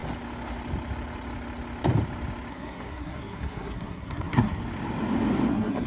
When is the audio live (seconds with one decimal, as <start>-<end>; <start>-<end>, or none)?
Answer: 0.0-2.5; 4.6-5.5